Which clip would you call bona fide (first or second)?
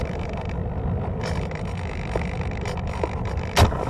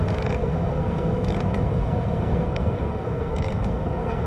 first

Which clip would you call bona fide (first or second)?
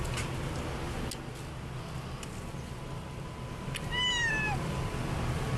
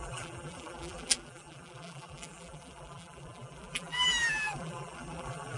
first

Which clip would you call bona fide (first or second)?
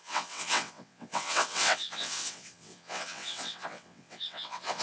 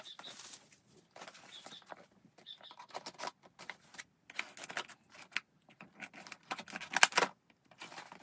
second